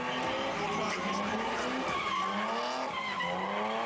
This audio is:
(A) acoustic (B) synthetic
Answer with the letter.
A